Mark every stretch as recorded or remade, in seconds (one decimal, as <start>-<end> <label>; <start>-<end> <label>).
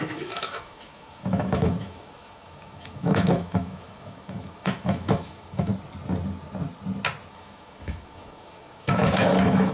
0.0-5.7 remade; 5.7-7.3 recorded; 7.3-9.7 remade